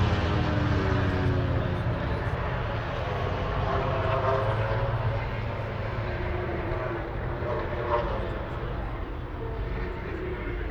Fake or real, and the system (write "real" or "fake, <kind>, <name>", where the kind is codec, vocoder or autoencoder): real